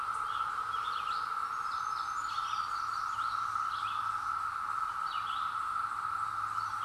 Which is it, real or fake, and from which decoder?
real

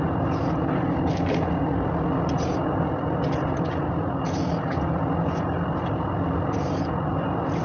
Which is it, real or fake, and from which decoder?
real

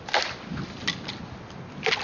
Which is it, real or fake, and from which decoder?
real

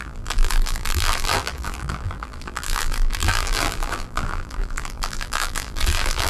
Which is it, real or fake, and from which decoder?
fake, vocoder, BigVGAN v2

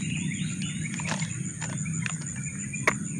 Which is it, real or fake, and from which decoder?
real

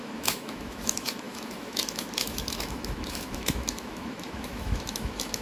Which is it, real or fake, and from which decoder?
fake, autoencoder, DAC-VAE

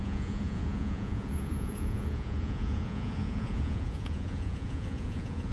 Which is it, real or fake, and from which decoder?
fake, vocoder, Vocos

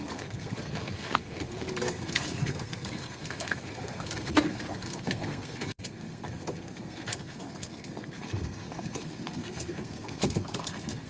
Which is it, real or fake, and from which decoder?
fake, codec, SNAC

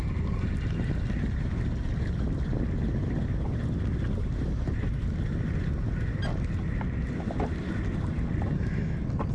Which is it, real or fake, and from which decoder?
real